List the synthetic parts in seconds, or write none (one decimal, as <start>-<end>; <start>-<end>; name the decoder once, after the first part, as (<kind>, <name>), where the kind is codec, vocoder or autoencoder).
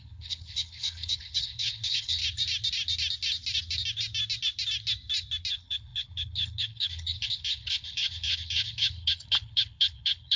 0.0-2.2 (codec, HILCodec); 5.5-10.4